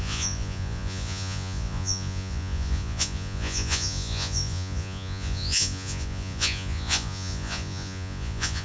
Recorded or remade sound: remade